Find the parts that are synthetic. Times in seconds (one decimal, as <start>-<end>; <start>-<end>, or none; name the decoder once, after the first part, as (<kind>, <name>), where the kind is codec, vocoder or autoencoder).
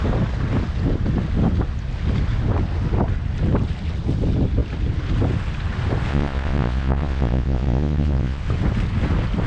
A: 6.1-8.4 (vocoder, Vocos)